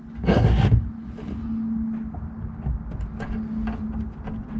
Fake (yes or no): no